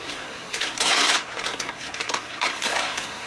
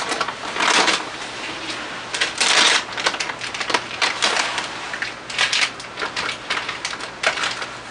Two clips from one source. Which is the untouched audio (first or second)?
second